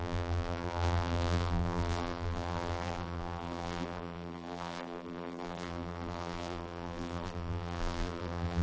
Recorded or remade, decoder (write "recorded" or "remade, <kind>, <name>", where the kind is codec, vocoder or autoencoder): remade, vocoder, BigVGAN v2